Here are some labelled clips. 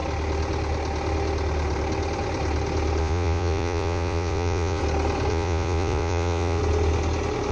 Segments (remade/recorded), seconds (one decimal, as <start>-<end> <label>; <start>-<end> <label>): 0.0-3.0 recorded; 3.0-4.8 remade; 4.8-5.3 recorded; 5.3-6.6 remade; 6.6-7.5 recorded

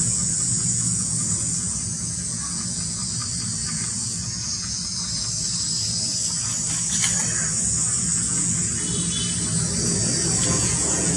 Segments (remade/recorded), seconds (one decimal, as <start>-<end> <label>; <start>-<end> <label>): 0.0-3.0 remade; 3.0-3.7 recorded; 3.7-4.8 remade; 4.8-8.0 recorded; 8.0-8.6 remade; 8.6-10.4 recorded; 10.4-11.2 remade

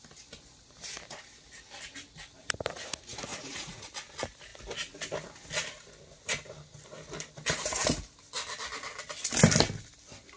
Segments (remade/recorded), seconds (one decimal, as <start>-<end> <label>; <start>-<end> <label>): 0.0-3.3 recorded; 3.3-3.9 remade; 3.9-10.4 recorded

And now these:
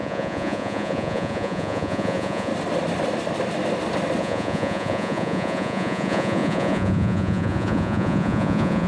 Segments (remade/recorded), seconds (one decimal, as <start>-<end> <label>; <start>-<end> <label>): 0.0-2.5 remade; 2.5-4.2 recorded; 4.2-8.9 remade